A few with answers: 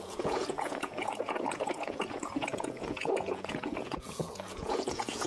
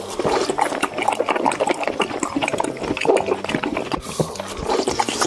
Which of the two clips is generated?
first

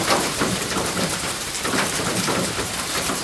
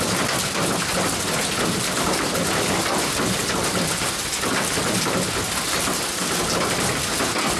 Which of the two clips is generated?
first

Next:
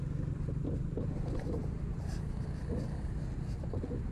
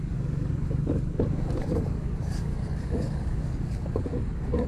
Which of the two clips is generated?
second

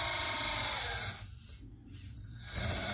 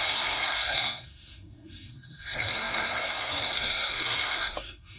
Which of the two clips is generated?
second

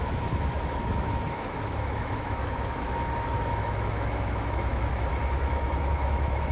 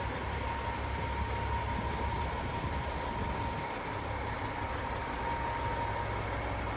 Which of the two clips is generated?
first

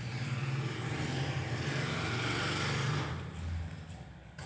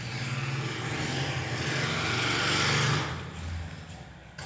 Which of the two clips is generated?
first